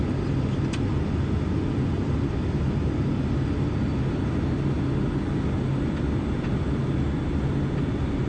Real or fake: real